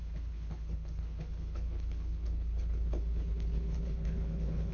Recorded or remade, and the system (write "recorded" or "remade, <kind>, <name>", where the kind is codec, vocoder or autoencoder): remade, codec, HILCodec